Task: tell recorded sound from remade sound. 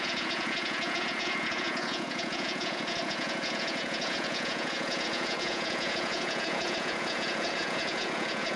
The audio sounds remade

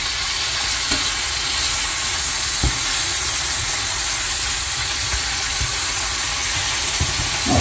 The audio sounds remade